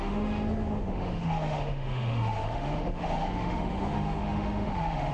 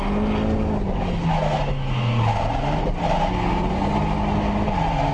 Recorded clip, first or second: second